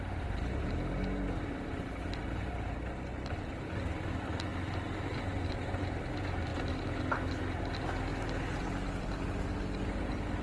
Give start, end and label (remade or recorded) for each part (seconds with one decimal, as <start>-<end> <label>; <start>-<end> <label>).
0.0-10.4 recorded